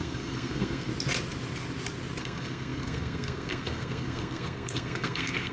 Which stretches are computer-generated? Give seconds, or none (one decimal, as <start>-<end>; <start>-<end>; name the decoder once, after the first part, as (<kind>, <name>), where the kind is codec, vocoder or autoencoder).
0.0-0.9 (codec, SNAC); 2.2-5.5